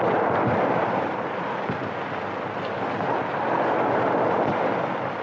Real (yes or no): yes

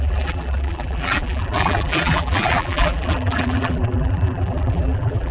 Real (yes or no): no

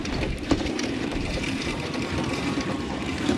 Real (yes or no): no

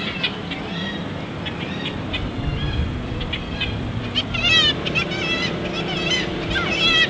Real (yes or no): no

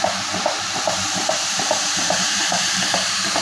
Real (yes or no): no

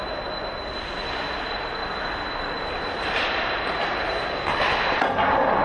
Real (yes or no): yes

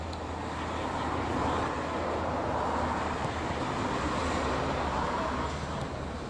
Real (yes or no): yes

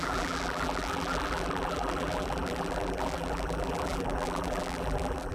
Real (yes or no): no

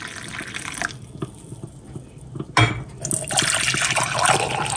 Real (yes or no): yes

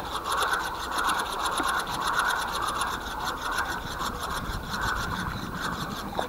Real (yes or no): no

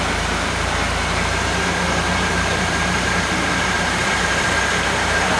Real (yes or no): no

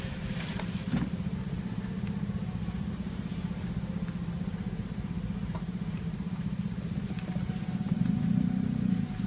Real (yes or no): no